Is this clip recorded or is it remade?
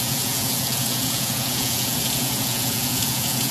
remade